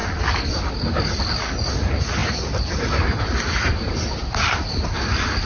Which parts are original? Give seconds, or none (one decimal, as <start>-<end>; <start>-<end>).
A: 0.0-5.5